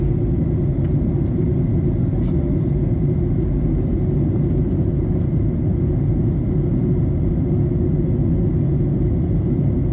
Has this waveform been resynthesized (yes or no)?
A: no